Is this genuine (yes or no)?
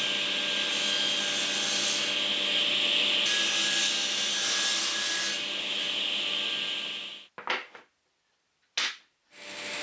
yes